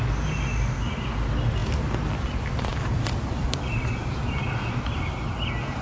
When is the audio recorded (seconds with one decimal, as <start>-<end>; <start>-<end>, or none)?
0.0-2.7; 3.9-5.8